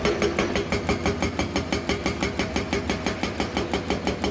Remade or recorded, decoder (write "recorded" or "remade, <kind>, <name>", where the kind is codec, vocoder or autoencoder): recorded